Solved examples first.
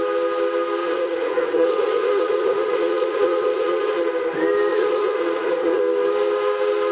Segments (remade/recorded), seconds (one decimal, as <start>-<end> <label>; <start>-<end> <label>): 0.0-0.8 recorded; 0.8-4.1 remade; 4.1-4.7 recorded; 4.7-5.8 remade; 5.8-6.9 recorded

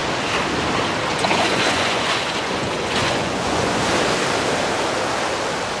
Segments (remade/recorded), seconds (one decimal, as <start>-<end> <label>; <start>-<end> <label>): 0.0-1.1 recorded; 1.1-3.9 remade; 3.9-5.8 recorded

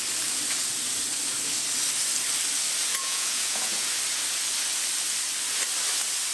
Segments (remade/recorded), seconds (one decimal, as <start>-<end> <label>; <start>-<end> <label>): 0.0-2.9 recorded; 2.9-3.9 remade; 3.9-6.3 recorded

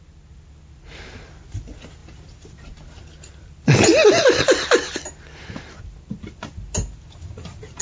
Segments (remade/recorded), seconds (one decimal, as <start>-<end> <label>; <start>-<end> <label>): 0.0-7.8 recorded

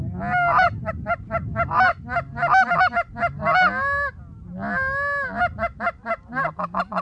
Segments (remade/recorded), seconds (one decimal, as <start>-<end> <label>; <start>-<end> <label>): 0.0-7.0 recorded

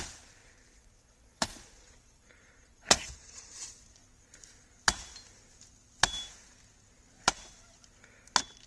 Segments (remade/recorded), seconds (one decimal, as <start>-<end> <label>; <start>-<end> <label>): 0.0-0.4 recorded; 0.4-4.0 remade; 4.0-8.7 recorded

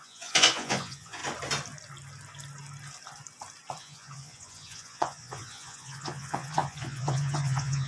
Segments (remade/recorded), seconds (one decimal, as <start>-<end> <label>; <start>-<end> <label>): 0.0-1.2 remade; 1.2-3.8 recorded; 3.8-7.9 remade

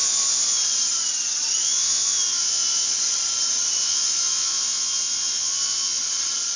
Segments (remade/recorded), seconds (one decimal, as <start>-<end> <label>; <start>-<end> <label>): 0.0-0.6 remade; 0.6-1.6 recorded; 1.6-2.9 remade; 2.9-3.8 recorded; 3.8-6.0 remade; 6.0-6.6 recorded